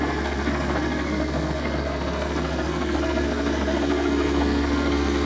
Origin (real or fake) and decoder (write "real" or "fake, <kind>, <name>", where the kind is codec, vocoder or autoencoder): fake, codec, SNAC